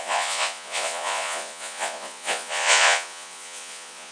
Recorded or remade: remade